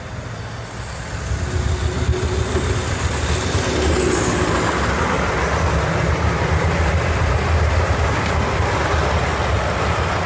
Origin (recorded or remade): recorded